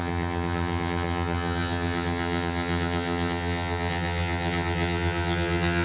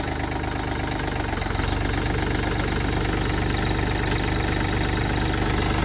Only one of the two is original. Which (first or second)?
second